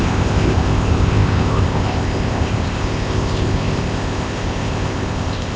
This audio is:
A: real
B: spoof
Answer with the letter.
B